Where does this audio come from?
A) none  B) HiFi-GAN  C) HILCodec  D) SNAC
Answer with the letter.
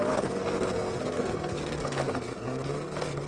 D